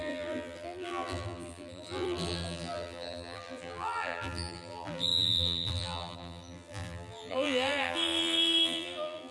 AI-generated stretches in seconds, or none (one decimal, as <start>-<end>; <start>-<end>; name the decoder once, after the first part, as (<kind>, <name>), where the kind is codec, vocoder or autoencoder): 0.0-9.3 (vocoder, BigVGAN v2)